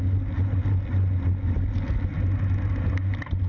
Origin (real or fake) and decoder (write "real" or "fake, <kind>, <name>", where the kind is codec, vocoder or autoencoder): real